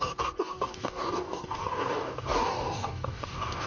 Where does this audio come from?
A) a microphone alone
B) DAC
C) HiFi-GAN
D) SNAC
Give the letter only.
B